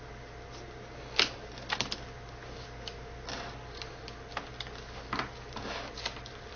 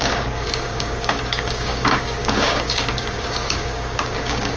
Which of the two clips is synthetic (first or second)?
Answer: second